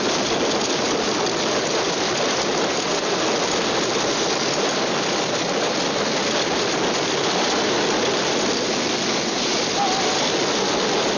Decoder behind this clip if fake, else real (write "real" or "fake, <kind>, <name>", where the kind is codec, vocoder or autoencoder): real